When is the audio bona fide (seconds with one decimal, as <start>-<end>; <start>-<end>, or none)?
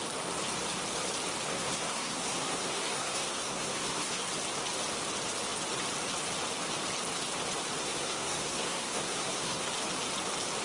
0.0-1.5; 4.3-7.8; 9.7-10.6